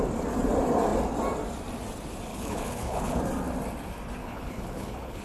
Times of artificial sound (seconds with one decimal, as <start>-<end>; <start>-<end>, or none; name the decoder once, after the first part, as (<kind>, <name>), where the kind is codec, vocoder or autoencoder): 2.3-3.2 (codec, HILCodec); 4.2-5.2